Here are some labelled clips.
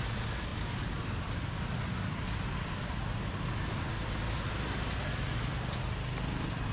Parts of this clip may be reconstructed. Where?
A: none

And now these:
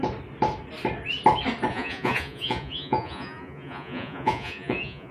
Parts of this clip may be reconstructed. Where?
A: 1.7-5.1 (vocoder, Vocos)

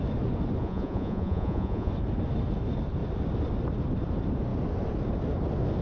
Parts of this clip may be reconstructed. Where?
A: 0.6-1.9 (vocoder, Vocos)

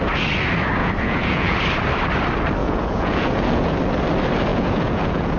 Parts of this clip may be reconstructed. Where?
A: 0.8-1.6 (vocoder, Vocos); 2.6-3.8; 4.5-5.4

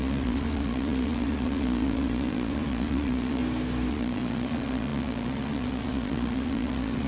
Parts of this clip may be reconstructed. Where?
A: 0.0-3.4 (vocoder, Vocos); 3.9-7.1

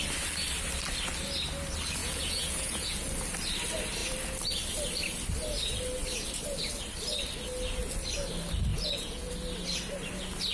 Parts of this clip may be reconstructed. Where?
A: 2.0-3.1 (vocoder, Vocos); 8.7-9.3